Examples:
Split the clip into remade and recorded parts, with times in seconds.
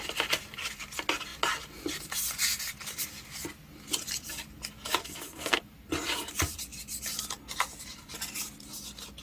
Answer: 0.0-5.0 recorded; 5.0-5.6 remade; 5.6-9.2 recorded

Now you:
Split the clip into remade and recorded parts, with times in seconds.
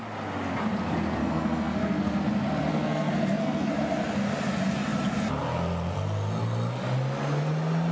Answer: 0.0-1.2 recorded; 1.2-2.2 remade; 2.2-2.7 recorded; 2.7-3.7 remade; 3.7-7.9 recorded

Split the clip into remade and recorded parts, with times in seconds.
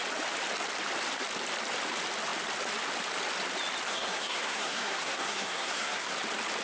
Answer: 0.0-3.9 recorded; 3.9-6.1 remade; 6.1-6.6 recorded